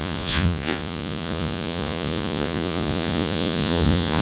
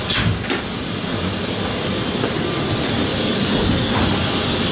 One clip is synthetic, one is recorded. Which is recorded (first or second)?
second